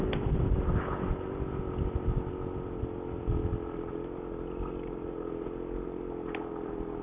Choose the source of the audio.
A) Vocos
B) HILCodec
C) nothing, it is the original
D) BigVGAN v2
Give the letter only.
C